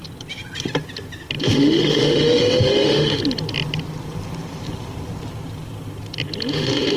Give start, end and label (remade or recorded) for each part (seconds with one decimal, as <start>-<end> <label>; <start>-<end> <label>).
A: 0.0-1.4 recorded; 1.4-3.2 remade; 3.2-6.5 recorded; 6.5-7.0 remade